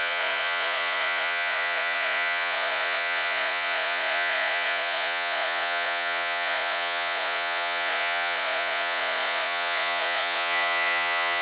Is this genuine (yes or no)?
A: no